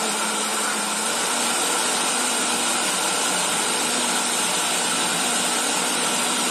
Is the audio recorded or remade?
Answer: remade